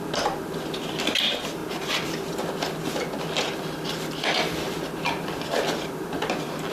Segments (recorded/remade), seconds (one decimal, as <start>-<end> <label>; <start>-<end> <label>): 0.0-6.7 recorded